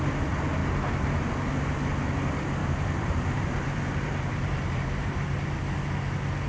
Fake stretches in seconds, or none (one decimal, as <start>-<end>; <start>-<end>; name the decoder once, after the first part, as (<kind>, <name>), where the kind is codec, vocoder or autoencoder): 2.6-5.6 (vocoder, BigVGAN v2)